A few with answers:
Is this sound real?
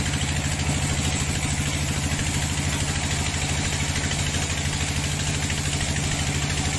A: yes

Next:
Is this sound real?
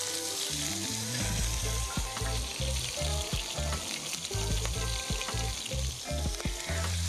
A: yes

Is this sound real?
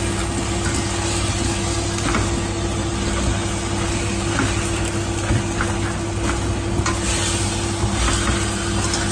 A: yes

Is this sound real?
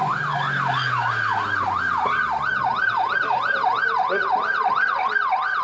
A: yes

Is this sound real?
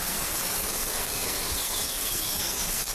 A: no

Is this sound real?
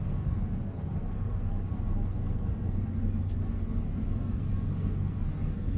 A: no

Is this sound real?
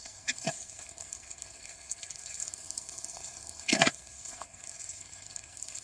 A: no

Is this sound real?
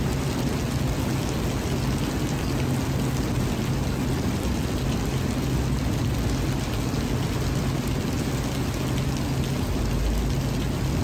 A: yes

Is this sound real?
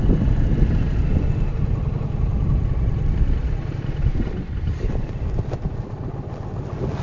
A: yes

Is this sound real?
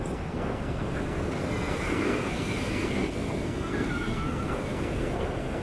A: no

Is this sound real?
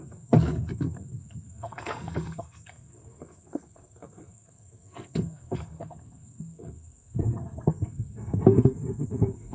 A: no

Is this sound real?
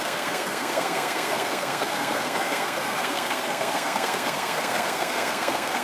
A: no